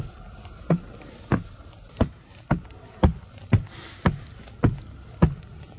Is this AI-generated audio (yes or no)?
no